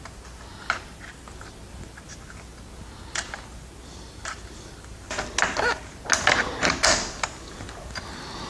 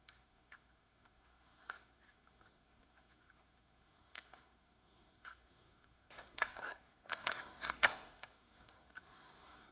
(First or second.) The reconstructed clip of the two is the second